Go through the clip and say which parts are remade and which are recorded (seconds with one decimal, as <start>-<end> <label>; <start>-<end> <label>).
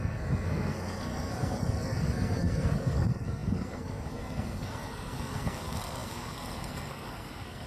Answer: 0.0-7.7 remade